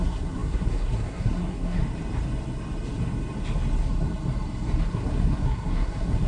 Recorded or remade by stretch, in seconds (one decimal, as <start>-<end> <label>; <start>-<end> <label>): 0.0-1.8 remade; 1.8-4.9 recorded; 4.9-6.3 remade

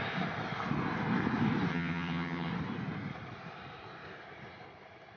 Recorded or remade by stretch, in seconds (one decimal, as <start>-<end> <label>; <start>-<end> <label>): 0.0-1.7 recorded; 1.7-2.5 remade; 2.5-5.2 recorded

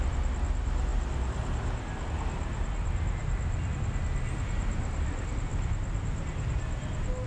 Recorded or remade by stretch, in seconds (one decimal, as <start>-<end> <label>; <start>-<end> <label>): 0.0-7.3 recorded

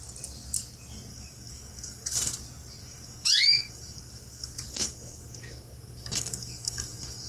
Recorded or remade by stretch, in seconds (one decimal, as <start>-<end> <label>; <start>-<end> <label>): 0.0-1.1 recorded; 1.1-2.3 remade; 2.3-2.8 recorded; 2.8-7.3 remade

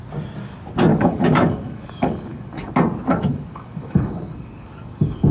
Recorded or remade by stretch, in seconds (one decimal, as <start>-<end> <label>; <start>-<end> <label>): 0.0-0.9 recorded; 0.9-2.7 remade; 2.7-3.1 recorded; 3.1-5.3 remade

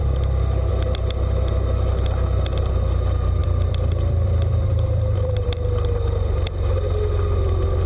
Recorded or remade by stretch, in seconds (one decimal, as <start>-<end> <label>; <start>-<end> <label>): 0.0-0.7 remade; 0.7-3.4 recorded; 3.4-5.9 remade; 5.9-7.9 recorded

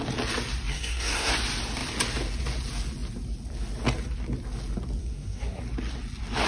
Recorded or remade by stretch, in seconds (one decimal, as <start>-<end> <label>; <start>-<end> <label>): 0.0-0.7 recorded; 0.7-1.3 remade; 1.3-5.0 recorded; 5.0-5.6 remade; 5.6-6.5 recorded